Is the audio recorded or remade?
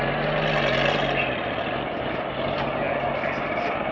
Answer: recorded